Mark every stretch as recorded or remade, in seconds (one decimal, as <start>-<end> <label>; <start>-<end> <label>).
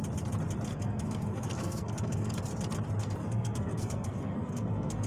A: 0.0-0.7 recorded; 0.7-2.4 remade; 2.4-3.0 recorded; 3.0-5.1 remade